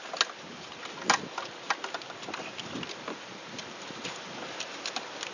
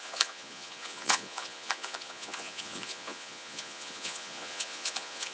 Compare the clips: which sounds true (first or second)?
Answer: first